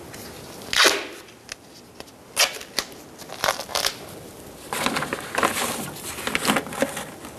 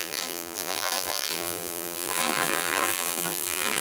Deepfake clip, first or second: second